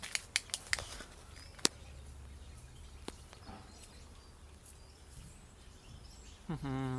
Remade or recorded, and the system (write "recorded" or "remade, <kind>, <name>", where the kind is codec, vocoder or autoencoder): recorded